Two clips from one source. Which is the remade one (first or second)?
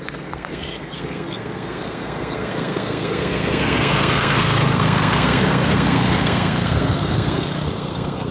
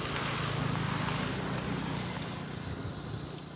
first